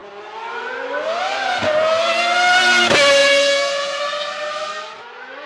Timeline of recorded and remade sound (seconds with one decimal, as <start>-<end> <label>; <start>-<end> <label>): 0.0-3.2 recorded; 3.2-4.0 remade; 4.0-5.5 recorded